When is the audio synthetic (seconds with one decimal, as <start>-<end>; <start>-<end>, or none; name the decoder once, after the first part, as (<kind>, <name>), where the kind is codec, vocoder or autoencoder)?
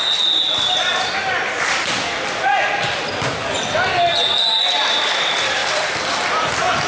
5.6-6.3 (vocoder, BigVGAN v2)